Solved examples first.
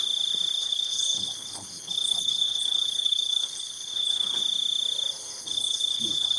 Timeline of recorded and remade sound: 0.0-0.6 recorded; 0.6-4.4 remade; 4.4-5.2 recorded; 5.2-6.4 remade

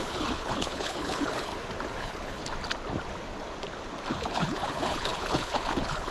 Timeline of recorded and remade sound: 0.0-1.5 remade; 1.5-2.0 recorded; 2.0-2.4 remade; 2.4-4.1 recorded; 4.1-6.1 remade

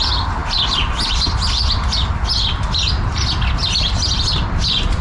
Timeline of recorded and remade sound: 0.0-5.0 recorded

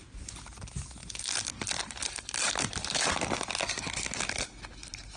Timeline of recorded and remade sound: 0.0-5.2 recorded

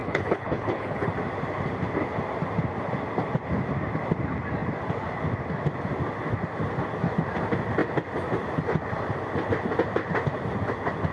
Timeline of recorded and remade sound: 0.0-1.1 remade; 1.1-11.1 recorded

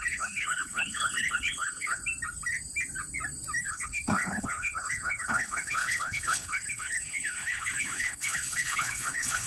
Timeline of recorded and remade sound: 0.0-2.0 remade; 2.0-3.6 recorded; 3.6-9.5 remade

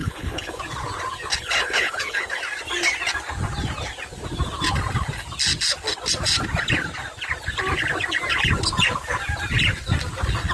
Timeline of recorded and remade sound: 0.0-0.6 remade; 0.6-1.3 recorded; 1.3-2.4 remade; 2.4-10.5 recorded